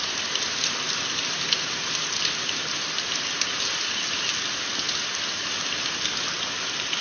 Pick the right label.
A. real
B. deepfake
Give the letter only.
A